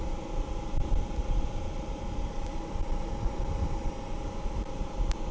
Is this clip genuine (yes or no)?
yes